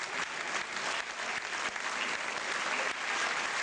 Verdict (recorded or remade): recorded